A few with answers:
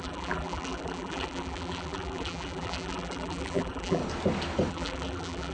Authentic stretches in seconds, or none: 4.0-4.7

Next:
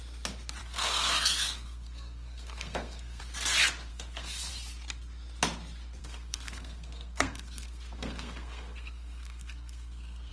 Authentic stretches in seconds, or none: 0.0-0.6; 3.2-3.9; 4.5-6.0

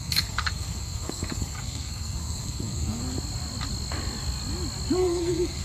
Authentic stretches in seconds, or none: 3.0-5.0

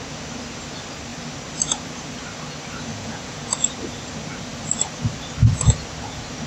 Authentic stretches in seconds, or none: 0.0-2.9; 3.5-6.5

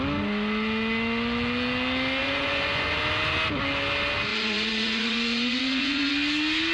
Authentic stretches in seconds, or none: 0.0-2.2; 3.0-4.3; 6.1-6.7

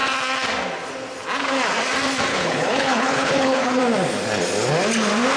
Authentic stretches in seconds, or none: 0.0-2.3; 3.8-5.4

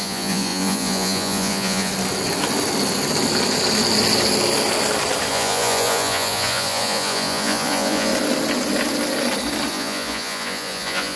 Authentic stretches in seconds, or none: 1.9-5.3; 8.1-9.7